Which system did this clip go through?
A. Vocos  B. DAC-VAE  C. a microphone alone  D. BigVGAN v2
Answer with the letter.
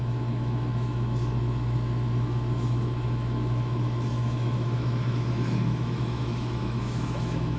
B